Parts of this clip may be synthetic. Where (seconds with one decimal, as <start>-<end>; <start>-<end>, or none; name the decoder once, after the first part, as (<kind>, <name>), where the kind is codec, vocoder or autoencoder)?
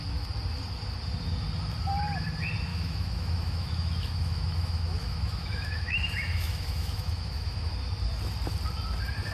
2.7-7.7 (autoencoder, DAC-VAE)